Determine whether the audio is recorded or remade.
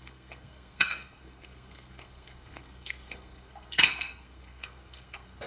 remade